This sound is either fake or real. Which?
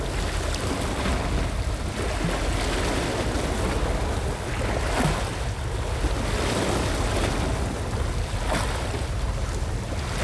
real